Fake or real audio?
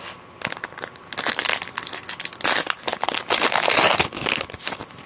real